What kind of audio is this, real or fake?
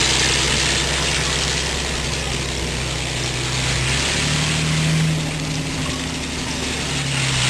real